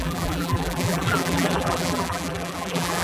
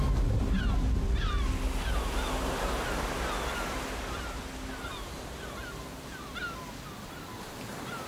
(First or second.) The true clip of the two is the second